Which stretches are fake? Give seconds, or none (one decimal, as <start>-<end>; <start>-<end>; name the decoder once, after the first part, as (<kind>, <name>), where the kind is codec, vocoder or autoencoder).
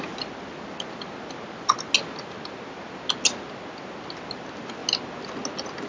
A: none